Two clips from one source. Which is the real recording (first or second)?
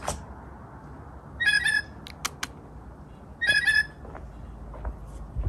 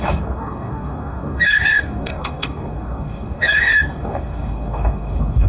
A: first